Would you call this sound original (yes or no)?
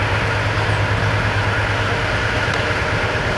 yes